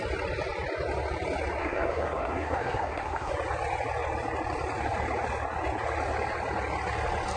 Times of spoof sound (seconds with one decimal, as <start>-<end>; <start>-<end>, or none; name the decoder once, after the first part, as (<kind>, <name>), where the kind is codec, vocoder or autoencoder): 1.6-3.3 (codec, SNAC)

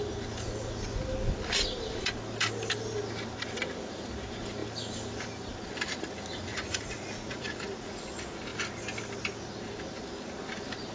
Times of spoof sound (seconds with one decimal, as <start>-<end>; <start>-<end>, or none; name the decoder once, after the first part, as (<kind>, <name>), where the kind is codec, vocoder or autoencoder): 6.5-7.9 (vocoder, Vocos)

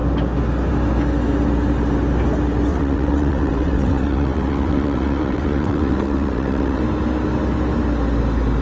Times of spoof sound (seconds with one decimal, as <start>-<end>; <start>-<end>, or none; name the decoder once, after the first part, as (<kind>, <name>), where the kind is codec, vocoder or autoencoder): 2.7-6.8 (vocoder, WaveNeXt)

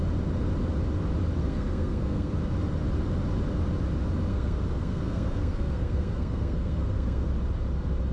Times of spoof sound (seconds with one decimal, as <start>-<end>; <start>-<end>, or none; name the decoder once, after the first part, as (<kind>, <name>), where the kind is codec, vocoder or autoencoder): 1.4-2.3 (codec, SNAC); 4.3-7.3

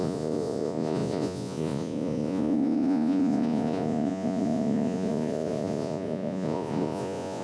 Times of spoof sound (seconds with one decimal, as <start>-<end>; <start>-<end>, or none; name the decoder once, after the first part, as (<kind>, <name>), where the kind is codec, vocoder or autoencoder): 0.0-7.4 (vocoder, Vocos)